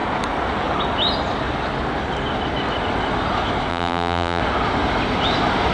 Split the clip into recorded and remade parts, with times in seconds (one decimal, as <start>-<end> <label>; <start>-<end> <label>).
0.0-3.7 recorded; 3.7-4.4 remade; 4.4-5.7 recorded